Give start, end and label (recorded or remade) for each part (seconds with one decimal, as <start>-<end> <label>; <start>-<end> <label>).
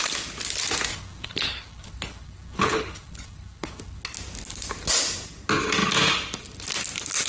0.0-0.9 recorded; 0.9-4.0 remade; 4.0-7.3 recorded